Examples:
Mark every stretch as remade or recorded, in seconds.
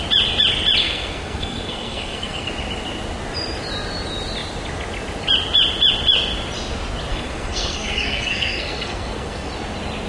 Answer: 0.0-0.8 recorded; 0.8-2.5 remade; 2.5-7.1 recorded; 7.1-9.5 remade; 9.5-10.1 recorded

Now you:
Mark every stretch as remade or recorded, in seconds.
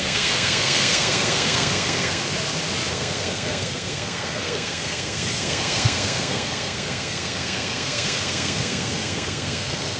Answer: 0.0-2.2 remade; 2.2-2.9 recorded; 2.9-10.0 remade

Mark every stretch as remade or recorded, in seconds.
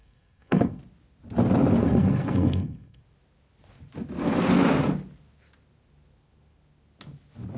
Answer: 0.0-0.8 remade; 0.8-1.8 recorded; 1.8-3.0 remade; 3.0-7.6 recorded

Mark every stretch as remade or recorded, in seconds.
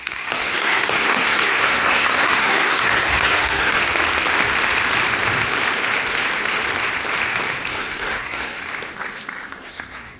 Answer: 0.0-3.8 remade; 3.8-7.7 recorded; 7.7-8.6 remade; 8.6-9.5 recorded; 9.5-10.2 remade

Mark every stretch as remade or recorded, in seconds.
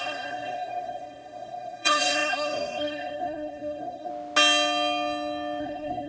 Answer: 0.0-4.1 remade; 4.1-5.6 recorded; 5.6-6.1 remade